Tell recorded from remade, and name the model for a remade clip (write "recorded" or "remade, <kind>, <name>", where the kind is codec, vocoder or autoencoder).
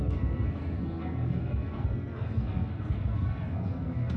remade, codec, SNAC